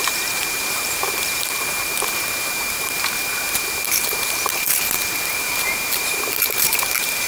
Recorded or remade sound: remade